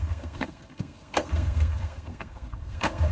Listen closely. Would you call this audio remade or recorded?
remade